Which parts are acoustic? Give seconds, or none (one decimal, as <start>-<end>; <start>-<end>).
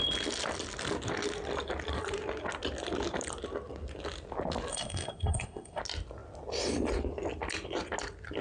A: 0.0-4.7; 5.8-8.4